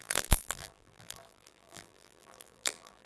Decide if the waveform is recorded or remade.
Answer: remade